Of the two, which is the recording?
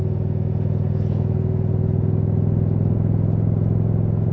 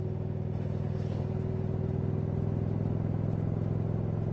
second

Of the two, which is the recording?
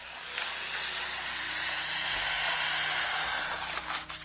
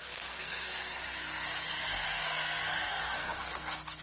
first